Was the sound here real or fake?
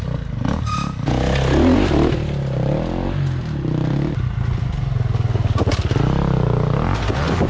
real